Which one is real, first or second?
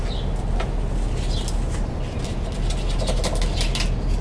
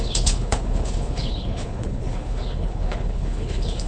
first